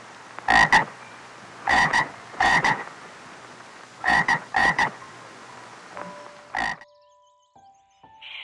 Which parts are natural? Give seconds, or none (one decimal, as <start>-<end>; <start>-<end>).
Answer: 0.0-0.8; 5.8-8.4